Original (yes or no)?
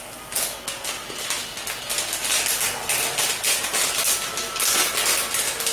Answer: yes